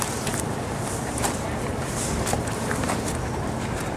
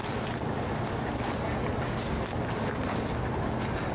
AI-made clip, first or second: first